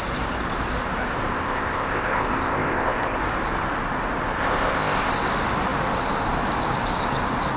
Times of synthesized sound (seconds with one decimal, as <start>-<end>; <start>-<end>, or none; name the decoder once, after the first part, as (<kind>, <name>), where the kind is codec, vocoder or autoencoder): 1.3-3.2 (codec, ZipCodec); 4.4-5.1